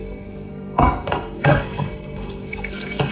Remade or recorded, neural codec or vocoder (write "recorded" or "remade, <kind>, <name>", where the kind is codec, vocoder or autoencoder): remade, codec, SNAC